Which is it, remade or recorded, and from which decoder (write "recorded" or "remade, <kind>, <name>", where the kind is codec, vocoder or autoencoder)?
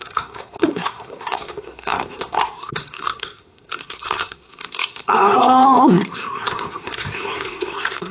remade, codec, SNAC